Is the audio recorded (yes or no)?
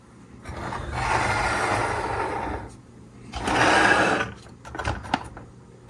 yes